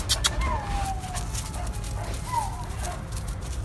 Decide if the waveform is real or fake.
real